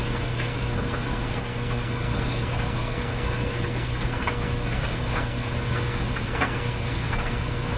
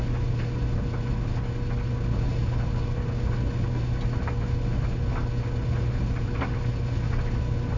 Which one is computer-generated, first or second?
first